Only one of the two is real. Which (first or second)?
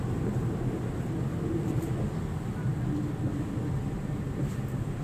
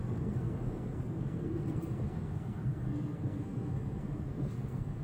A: first